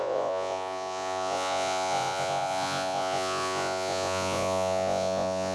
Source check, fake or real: fake